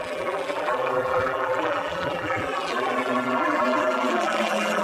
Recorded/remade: remade